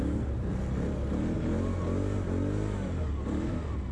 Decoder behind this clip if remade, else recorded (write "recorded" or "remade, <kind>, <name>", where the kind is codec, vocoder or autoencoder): recorded